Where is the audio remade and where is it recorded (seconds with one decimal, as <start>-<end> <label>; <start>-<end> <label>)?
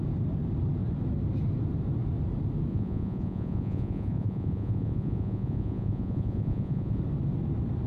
0.0-2.7 recorded; 2.7-7.0 remade; 7.0-7.9 recorded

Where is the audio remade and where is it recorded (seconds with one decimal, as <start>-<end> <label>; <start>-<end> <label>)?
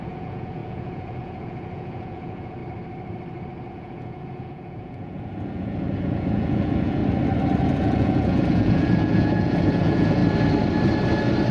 0.0-2.6 remade; 2.6-3.7 recorded; 3.7-7.0 remade; 7.0-7.6 recorded; 7.6-10.2 remade; 10.2-11.5 recorded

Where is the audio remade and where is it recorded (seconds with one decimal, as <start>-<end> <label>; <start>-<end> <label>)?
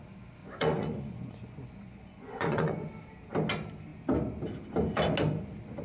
0.0-0.4 recorded; 0.4-2.9 remade; 2.9-5.8 recorded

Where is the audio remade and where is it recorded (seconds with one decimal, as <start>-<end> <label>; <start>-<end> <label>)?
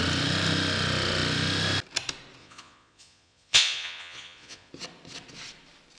0.0-2.4 recorded; 2.4-4.7 remade; 4.7-6.0 recorded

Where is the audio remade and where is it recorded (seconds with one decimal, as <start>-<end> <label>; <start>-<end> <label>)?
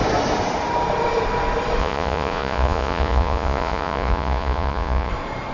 0.0-1.8 recorded; 1.8-5.1 remade; 5.1-5.5 recorded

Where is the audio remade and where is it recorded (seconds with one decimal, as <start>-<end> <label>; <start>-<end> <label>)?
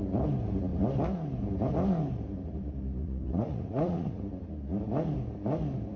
0.0-3.0 recorded; 3.0-4.2 remade; 4.2-6.0 recorded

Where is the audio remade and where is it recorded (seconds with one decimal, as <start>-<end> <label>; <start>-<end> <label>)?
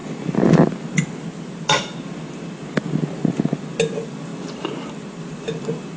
0.0-6.0 recorded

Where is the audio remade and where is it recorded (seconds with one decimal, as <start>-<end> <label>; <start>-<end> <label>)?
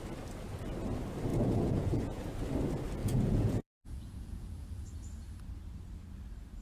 0.0-1.3 recorded; 1.3-2.2 remade; 2.2-3.0 recorded; 3.0-4.9 remade; 4.9-6.6 recorded